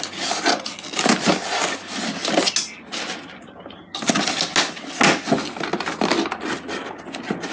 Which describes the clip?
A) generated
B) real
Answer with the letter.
B